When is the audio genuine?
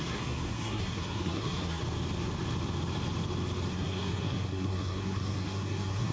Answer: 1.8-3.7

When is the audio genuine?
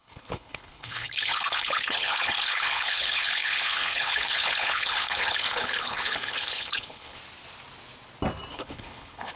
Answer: 7.2-8.5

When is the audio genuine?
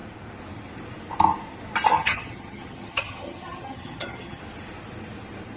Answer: 0.0-1.9; 4.4-5.6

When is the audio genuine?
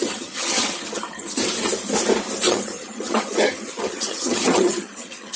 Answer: 1.4-2.5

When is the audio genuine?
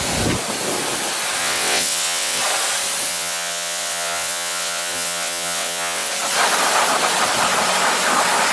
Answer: 0.0-1.4; 2.4-3.1; 6.1-8.5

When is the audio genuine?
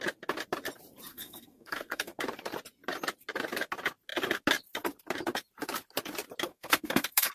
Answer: 0.0-1.1; 2.1-6.5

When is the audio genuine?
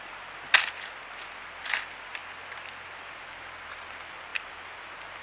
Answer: 0.0-5.2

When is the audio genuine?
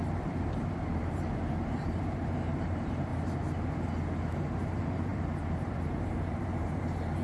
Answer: 3.1-4.2